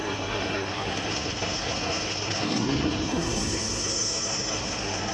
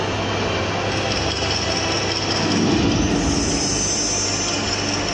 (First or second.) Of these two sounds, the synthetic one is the first